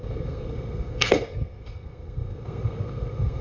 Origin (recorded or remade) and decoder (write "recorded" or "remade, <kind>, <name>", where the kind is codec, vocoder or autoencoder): remade, codec, SNAC